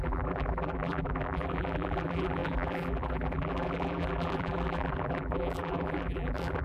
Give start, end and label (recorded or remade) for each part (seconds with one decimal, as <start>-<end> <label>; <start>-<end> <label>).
0.0-6.6 remade